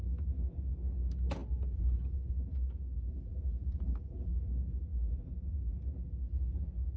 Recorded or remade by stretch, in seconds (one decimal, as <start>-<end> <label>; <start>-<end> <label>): 0.0-1.4 recorded; 1.4-2.3 remade; 2.3-3.3 recorded; 3.3-4.3 remade; 4.3-4.9 recorded; 4.9-5.9 remade; 5.9-7.0 recorded